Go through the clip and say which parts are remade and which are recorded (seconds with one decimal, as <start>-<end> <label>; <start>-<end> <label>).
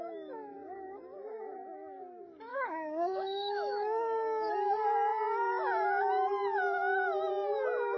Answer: 0.0-2.5 recorded; 2.5-4.5 remade; 4.5-8.0 recorded